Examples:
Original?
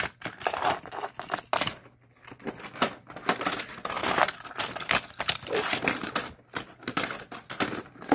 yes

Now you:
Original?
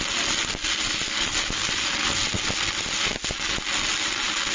yes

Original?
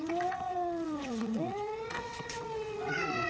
no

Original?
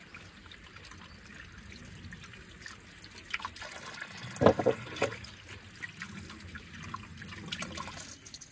yes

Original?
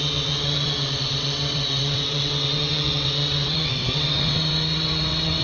no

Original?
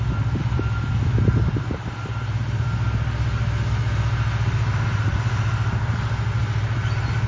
yes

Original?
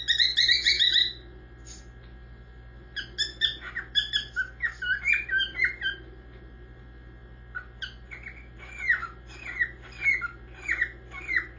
yes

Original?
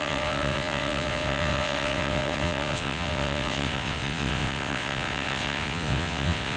no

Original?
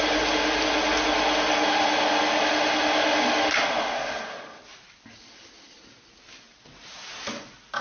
yes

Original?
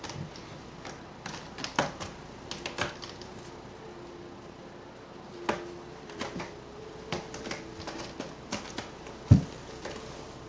yes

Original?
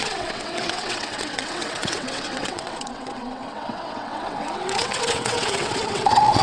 no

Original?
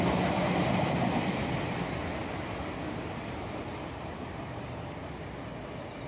yes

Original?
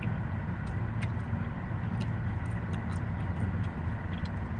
yes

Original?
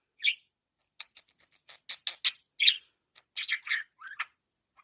yes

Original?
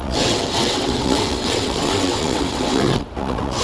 no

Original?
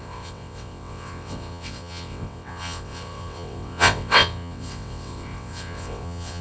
no